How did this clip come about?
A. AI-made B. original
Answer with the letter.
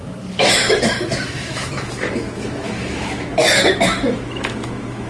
A